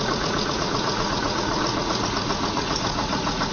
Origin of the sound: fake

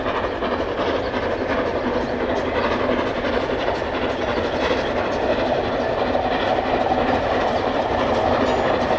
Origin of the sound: real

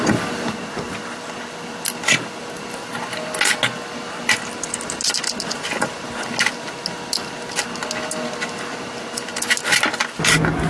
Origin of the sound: real